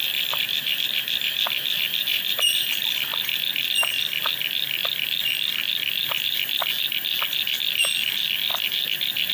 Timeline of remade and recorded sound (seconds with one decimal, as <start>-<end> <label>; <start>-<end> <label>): 0.0-2.1 recorded; 2.1-2.7 remade; 2.7-9.3 recorded